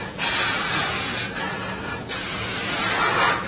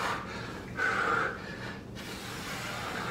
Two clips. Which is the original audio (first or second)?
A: second